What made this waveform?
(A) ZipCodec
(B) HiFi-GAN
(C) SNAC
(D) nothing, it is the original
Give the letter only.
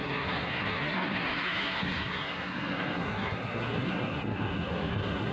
C